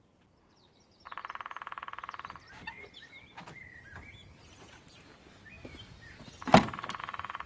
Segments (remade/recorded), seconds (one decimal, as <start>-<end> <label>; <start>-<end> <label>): 0.0-7.0 recorded; 7.0-7.5 remade